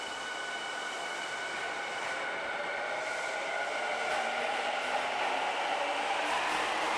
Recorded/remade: recorded